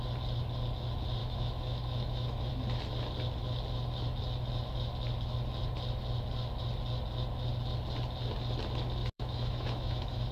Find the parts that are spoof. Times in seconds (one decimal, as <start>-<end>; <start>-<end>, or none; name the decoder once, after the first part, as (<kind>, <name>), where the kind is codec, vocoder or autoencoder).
1.2-2.5 (autoencoder, DAC-VAE); 9.0-10.3